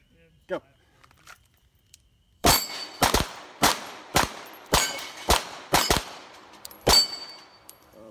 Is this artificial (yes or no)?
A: yes